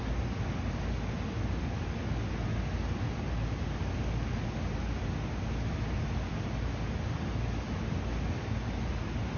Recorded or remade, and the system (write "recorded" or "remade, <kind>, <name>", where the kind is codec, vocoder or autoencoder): recorded